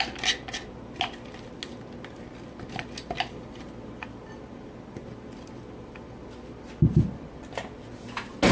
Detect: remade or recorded recorded